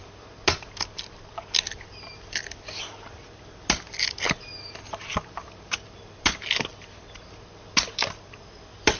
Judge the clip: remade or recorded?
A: recorded